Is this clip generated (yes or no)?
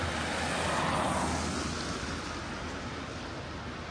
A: no